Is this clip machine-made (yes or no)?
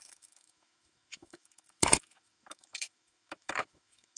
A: yes